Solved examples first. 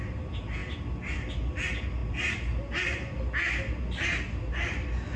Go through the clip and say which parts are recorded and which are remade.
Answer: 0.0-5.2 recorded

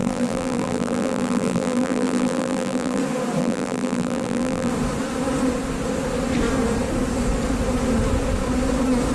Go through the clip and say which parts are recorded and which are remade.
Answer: 0.0-3.0 remade; 3.0-3.4 recorded; 3.4-4.7 remade; 4.7-9.1 recorded

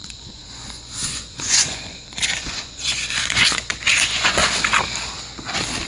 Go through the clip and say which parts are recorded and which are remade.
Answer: 0.0-4.4 remade; 4.4-5.9 recorded

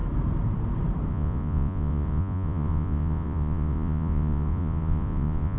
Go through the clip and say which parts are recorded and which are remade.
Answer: 0.0-1.1 recorded; 1.1-5.6 remade

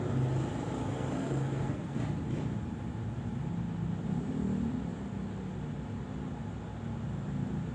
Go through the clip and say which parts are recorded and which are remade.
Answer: 0.0-0.8 recorded; 0.8-2.0 remade; 2.0-7.7 recorded

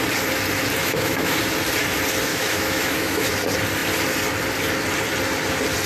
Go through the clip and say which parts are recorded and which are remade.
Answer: 0.0-0.8 recorded; 0.8-1.4 remade; 1.4-2.3 recorded; 2.3-3.3 remade; 3.3-5.9 recorded

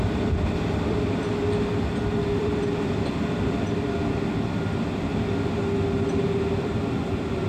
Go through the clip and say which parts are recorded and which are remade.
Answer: 0.0-5.1 remade; 5.1-6.4 recorded; 6.4-7.5 remade

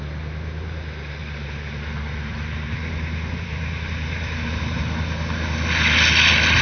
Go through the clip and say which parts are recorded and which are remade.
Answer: 0.0-1.2 recorded; 1.2-4.8 remade; 4.8-6.6 recorded